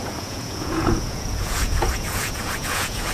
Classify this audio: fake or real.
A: fake